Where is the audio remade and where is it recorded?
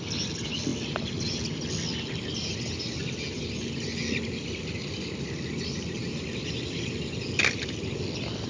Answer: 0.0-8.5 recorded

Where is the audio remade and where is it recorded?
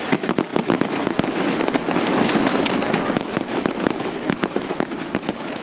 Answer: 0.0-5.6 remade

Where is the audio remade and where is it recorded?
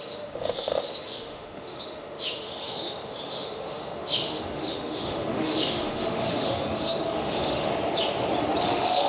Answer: 0.0-7.7 remade; 7.7-8.6 recorded; 8.6-9.1 remade